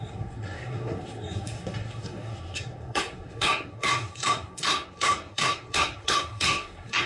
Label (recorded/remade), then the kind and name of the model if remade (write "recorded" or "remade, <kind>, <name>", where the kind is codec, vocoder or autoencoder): remade, codec, SNAC